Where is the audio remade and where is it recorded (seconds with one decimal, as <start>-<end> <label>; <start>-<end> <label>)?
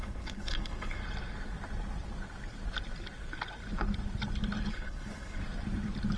0.0-1.0 remade; 1.0-4.7 recorded; 4.7-5.4 remade; 5.4-6.2 recorded